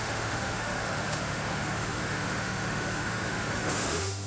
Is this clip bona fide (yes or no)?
no